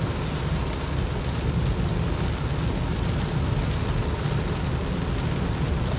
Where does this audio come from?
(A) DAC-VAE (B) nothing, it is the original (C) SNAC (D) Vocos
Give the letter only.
B